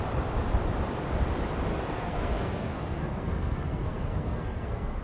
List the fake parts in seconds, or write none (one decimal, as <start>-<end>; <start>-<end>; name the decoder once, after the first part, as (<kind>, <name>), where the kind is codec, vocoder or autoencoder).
1.7-5.0 (codec, SNAC)